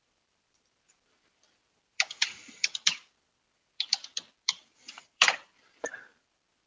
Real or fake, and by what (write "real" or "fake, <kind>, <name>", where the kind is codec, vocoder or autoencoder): fake, vocoder, BigVGAN v2